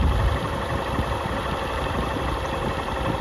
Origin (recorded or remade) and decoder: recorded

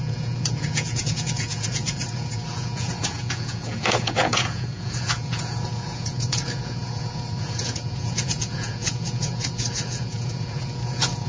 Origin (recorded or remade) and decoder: remade, vocoder, Vocos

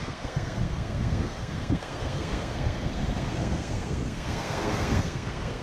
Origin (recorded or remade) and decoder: remade, codec, SNAC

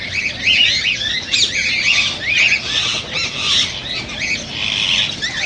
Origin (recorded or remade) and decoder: recorded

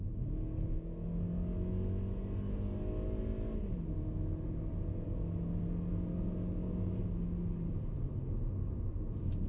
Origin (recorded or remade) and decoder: recorded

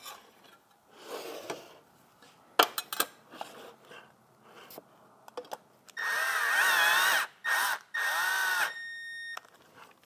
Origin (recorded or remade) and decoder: recorded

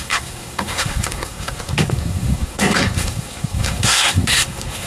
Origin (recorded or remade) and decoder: remade, codec, SNAC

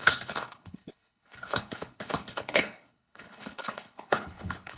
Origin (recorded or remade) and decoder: remade, codec, HILCodec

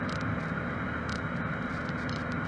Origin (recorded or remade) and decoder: recorded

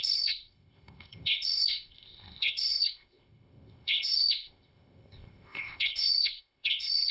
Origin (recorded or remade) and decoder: remade, codec, ZipCodec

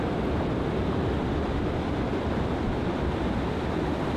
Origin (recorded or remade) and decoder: recorded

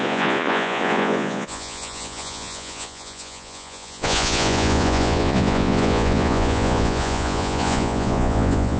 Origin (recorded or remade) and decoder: remade, vocoder, Vocos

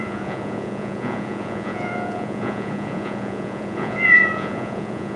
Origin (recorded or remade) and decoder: remade, vocoder, Vocos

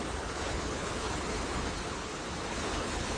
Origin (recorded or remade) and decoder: remade, codec, HILCodec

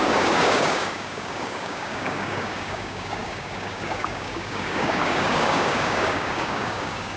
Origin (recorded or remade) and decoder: remade, codec, DAC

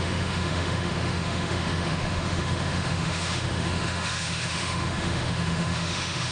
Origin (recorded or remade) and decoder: remade, autoencoder, DAC-VAE